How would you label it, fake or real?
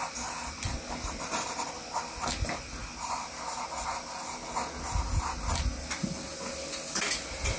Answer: real